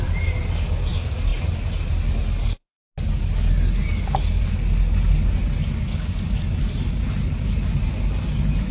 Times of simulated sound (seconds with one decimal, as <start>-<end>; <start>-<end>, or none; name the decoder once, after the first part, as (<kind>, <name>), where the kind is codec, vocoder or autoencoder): none